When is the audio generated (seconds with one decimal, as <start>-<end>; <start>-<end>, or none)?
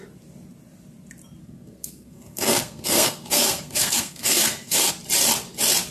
1.4-4.9